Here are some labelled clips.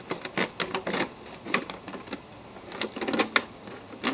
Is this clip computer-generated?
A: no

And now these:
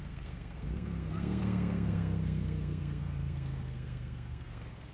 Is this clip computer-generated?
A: yes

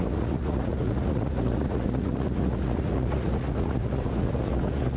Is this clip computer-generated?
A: yes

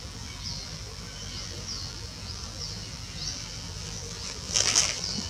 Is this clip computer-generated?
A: yes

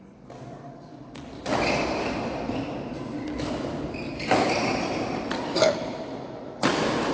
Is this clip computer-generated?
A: no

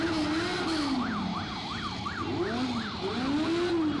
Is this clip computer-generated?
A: no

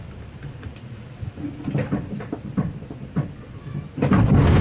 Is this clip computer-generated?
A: no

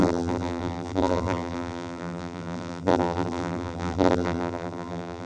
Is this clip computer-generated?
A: yes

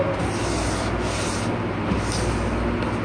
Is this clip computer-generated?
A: no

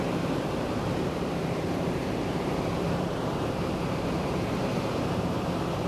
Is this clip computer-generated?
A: yes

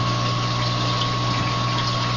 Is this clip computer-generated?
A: no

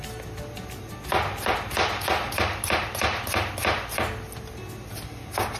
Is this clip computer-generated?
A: no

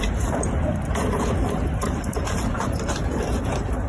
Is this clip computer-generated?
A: yes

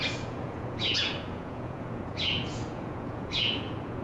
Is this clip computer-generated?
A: yes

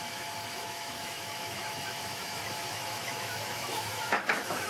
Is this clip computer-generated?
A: yes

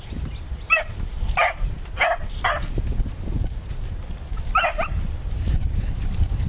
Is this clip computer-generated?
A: no